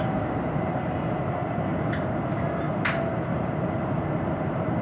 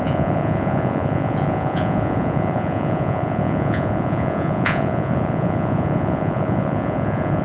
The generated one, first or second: second